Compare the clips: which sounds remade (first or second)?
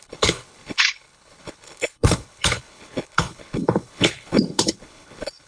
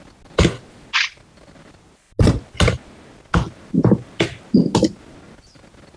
first